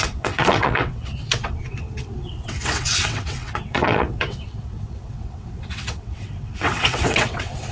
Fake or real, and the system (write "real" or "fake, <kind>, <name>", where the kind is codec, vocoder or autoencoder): fake, vocoder, WaveNeXt